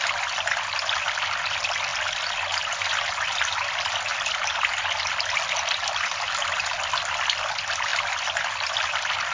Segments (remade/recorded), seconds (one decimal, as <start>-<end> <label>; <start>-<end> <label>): 0.0-9.3 recorded